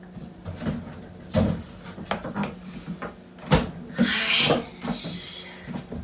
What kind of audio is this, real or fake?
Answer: real